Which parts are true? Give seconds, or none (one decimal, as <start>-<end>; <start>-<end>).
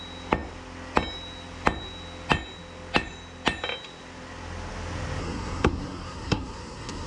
0.0-5.2